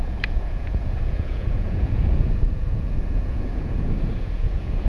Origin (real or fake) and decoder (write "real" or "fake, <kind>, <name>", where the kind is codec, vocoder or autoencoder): fake, vocoder, Vocos